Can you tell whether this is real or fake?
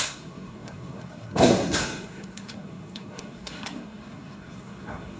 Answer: fake